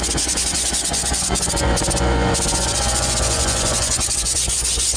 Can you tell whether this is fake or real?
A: fake